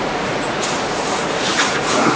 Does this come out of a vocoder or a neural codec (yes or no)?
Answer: yes